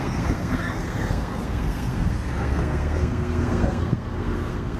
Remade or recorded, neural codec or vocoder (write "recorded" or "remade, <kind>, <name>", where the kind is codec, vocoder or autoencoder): remade, codec, SNAC